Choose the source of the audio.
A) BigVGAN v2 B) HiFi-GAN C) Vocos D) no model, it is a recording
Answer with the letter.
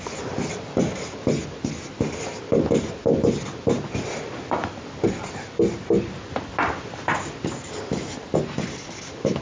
D